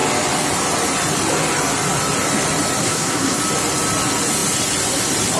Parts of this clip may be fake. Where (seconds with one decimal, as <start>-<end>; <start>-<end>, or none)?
2.8-3.4

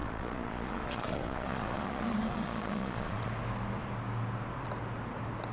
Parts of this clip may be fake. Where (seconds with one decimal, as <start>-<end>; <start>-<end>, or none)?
0.0-3.3

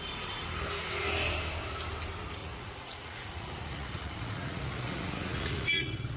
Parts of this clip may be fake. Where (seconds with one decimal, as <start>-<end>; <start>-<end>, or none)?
2.4-6.2